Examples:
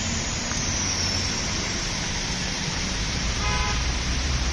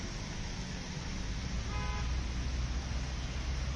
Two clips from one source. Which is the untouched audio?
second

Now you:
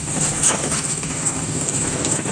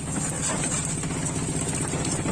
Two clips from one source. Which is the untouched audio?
second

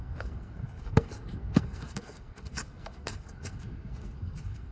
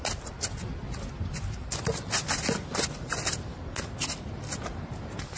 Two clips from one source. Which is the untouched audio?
second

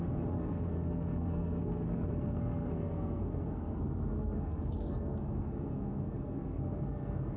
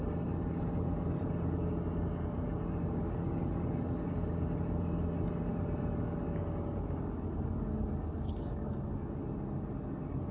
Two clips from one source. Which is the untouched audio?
second